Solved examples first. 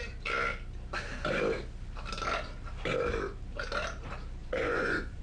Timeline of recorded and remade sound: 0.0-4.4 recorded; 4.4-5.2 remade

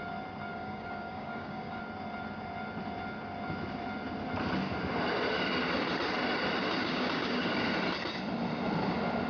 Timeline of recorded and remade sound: 0.0-0.5 recorded; 0.5-1.8 remade; 1.8-6.8 recorded; 6.8-7.4 remade; 7.4-9.3 recorded

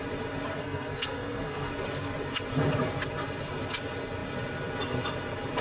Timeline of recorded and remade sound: 0.0-0.6 recorded; 0.6-1.7 remade; 1.7-5.6 recorded

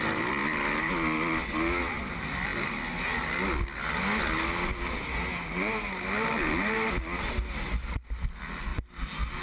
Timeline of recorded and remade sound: 0.0-9.4 recorded

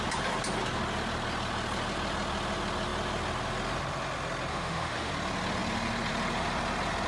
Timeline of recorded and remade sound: 0.0-4.5 recorded; 4.5-5.1 remade; 5.1-7.1 recorded